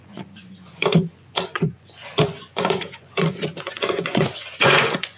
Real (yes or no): no